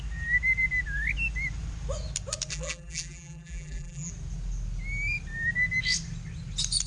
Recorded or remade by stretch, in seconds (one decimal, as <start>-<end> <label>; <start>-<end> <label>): 0.0-2.5 recorded; 2.5-4.1 remade; 4.1-6.9 recorded